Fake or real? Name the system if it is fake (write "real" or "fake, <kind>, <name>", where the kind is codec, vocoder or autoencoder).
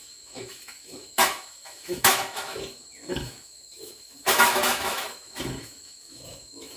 fake, autoencoder, DAC-VAE